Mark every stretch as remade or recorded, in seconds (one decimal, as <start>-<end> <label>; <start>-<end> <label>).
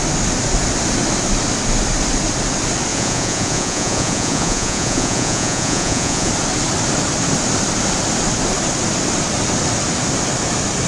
0.0-2.9 recorded; 2.9-6.3 remade; 6.3-10.9 recorded